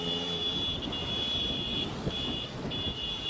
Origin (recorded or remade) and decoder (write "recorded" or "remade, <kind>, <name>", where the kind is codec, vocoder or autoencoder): recorded